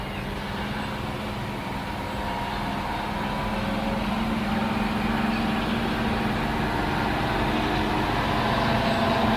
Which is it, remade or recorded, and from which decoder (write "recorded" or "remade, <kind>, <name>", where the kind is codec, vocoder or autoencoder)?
recorded